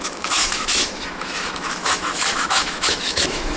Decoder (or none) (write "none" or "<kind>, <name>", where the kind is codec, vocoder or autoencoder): autoencoder, DAC-VAE